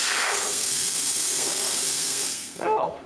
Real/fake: fake